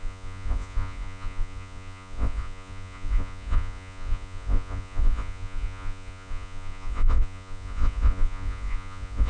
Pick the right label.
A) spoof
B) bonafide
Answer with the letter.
A